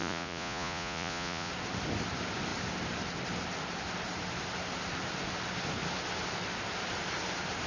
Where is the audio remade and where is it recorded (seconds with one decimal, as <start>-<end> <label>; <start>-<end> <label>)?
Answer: 0.0-1.5 remade; 1.5-7.7 recorded

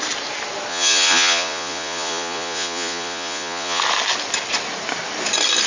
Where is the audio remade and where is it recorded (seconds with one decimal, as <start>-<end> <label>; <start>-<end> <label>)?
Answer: 0.0-0.7 recorded; 0.7-3.8 remade; 3.8-5.7 recorded

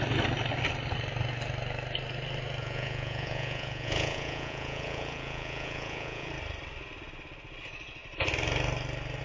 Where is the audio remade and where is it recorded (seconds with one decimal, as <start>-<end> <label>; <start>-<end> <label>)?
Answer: 0.0-2.6 recorded; 2.6-6.3 remade; 6.3-9.2 recorded

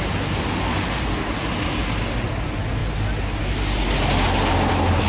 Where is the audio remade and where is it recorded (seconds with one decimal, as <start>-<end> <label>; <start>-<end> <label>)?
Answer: 0.0-5.1 recorded

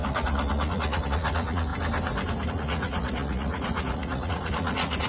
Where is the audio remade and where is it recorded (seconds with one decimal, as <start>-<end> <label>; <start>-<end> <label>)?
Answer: 0.0-1.7 remade; 1.7-2.5 recorded; 2.5-5.1 remade

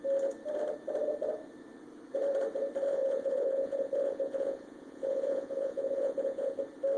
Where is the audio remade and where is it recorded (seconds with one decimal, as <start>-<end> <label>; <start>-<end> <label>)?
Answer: 0.0-2.9 recorded; 2.9-6.6 remade; 6.6-7.0 recorded